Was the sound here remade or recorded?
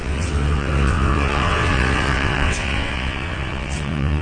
remade